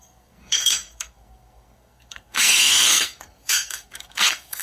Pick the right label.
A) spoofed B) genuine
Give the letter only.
A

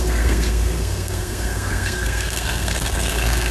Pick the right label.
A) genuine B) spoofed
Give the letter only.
B